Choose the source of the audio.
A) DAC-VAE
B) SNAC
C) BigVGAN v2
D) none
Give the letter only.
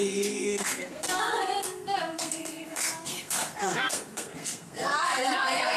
B